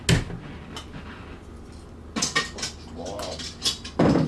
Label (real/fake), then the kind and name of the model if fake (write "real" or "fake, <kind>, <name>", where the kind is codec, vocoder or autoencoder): real